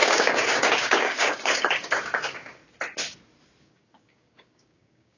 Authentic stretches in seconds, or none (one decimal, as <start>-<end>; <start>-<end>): 2.6-3.6